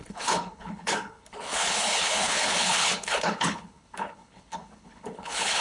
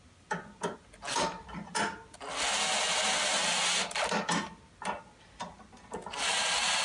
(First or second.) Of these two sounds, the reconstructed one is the first